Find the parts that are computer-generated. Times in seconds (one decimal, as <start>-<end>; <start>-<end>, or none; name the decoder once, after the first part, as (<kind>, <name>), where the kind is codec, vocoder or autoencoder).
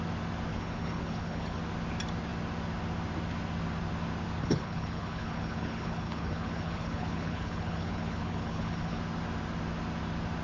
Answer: 0.5-1.6 (codec, HILCodec); 4.4-9.0